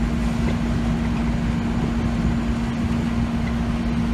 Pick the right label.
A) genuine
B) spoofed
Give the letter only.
A